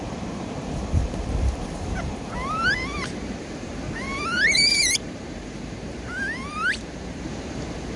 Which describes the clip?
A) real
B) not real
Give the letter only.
B